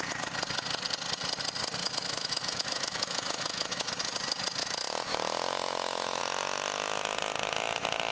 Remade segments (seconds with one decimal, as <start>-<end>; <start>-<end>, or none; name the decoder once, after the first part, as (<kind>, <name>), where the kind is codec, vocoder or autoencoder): 1.8-3.9 (autoencoder, DAC-VAE); 4.6-6.2